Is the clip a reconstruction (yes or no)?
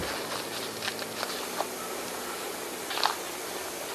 no